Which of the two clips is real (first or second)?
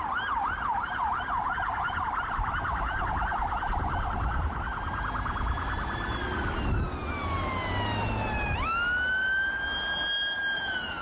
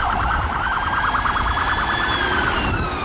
first